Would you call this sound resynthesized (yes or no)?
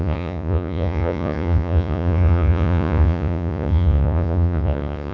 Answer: yes